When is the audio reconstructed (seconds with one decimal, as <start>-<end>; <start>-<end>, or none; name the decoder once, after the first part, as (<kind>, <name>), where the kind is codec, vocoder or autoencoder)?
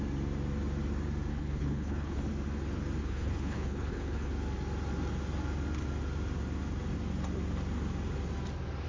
1.3-2.2 (codec, HILCodec); 3.0-4.3